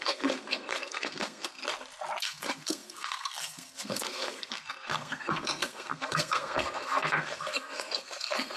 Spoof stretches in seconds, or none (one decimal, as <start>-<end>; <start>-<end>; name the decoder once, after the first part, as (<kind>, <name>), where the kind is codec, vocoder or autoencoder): 0.0-1.6 (codec, SNAC); 2.2-8.6